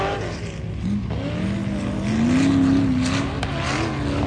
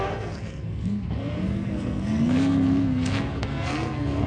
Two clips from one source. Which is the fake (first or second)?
second